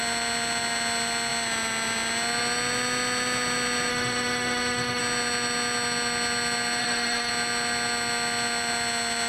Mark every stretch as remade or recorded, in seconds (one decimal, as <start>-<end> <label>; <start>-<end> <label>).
0.0-3.9 recorded; 3.9-5.0 remade; 5.0-6.8 recorded; 6.8-7.3 remade; 7.3-9.3 recorded